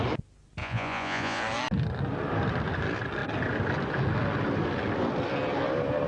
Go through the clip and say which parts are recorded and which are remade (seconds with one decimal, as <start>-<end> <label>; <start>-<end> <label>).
0.0-0.6 recorded; 0.6-1.4 remade; 1.4-6.1 recorded